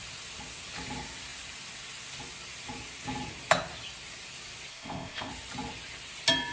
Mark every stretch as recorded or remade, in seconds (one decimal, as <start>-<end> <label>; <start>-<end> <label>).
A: 0.0-4.7 recorded; 4.7-5.3 remade; 5.3-6.5 recorded